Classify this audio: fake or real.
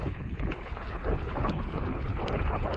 fake